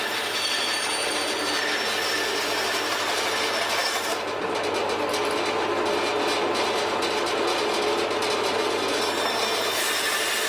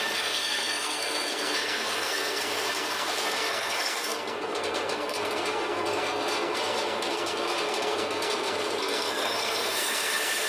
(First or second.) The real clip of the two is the first